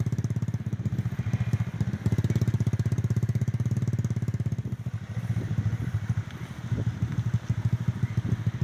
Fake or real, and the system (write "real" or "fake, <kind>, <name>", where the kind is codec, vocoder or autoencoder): real